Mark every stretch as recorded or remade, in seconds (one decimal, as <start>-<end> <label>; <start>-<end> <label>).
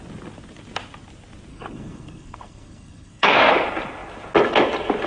0.0-1.5 recorded; 1.5-3.5 remade; 3.5-5.1 recorded